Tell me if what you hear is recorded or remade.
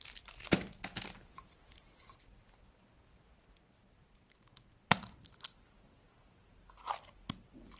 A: recorded